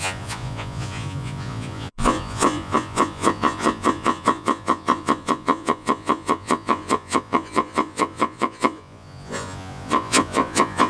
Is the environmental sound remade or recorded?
remade